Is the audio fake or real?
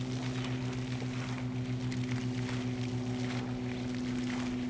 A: real